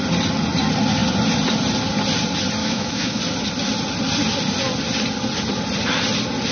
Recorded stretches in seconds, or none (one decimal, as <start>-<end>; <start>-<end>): 0.0-2.6; 3.2-6.5